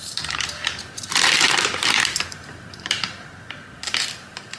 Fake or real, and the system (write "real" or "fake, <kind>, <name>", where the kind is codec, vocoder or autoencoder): fake, vocoder, BigVGAN v2